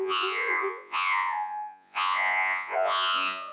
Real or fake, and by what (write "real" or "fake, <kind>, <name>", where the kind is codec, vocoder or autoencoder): fake, vocoder, Vocos